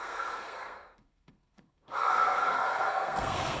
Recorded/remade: remade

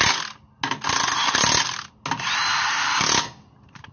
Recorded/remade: recorded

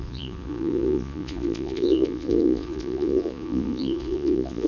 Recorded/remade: remade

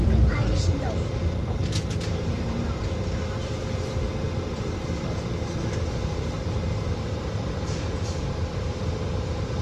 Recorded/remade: remade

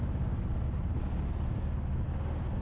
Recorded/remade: recorded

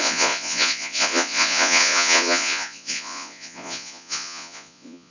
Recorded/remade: remade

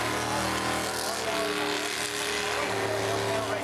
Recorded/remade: recorded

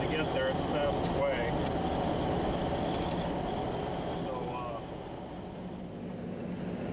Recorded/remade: recorded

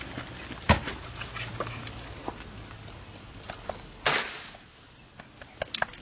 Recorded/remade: recorded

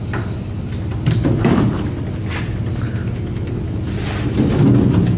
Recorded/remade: recorded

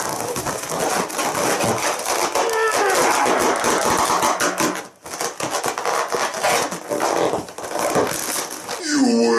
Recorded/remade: recorded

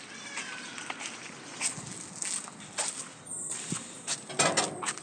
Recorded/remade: recorded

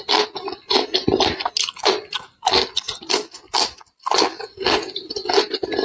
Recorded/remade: recorded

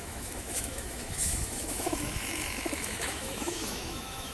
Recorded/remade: remade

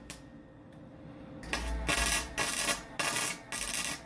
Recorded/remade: recorded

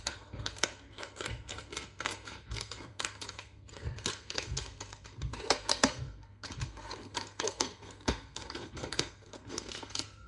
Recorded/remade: remade